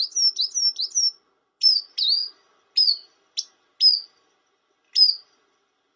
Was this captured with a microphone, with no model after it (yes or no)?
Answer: yes